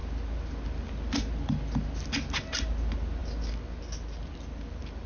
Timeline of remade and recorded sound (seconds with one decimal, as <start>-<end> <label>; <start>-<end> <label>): 0.0-5.1 recorded

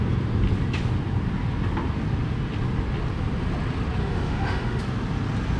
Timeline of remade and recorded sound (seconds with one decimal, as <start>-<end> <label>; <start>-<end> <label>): 0.0-4.0 recorded; 4.0-4.8 remade; 4.8-5.6 recorded

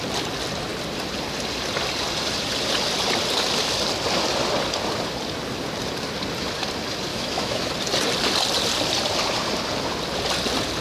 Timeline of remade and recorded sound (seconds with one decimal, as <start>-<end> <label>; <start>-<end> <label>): 0.0-7.1 recorded; 7.1-7.7 remade; 7.7-10.8 recorded